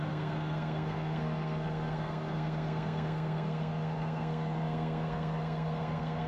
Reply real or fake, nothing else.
fake